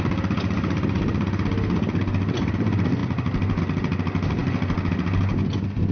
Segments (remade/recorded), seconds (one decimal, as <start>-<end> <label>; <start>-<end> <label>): 0.0-5.9 recorded